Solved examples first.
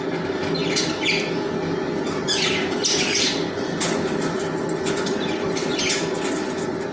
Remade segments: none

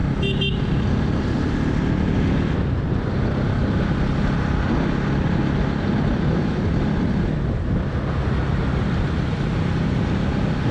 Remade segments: none

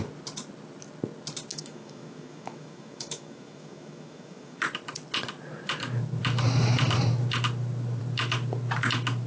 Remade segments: 1.5-4.6 (autoencoder, DAC-VAE)

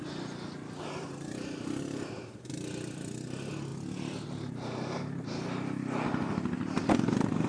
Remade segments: none

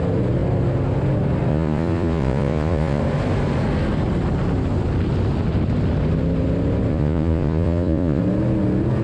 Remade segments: 1.5-3.0 (vocoder, Vocos); 6.9-8.2

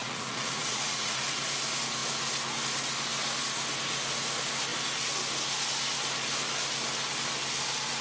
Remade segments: 0.0-1.2 (vocoder, Vocos)

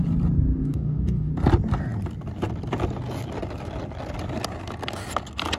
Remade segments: 0.6-1.3 (codec, DAC)